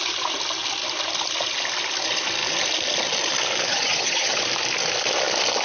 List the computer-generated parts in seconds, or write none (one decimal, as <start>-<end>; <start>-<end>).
3.7-4.4